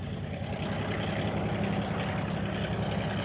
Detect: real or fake real